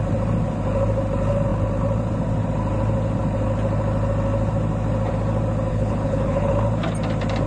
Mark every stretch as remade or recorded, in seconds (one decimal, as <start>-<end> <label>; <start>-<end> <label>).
0.0-5.7 recorded; 5.7-6.5 remade; 6.5-7.5 recorded